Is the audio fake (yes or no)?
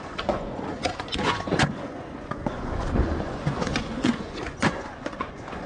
yes